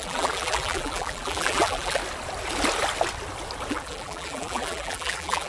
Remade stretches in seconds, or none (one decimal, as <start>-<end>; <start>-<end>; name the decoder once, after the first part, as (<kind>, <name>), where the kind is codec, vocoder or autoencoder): 0.0-2.0 (vocoder, BigVGAN v2); 3.7-5.5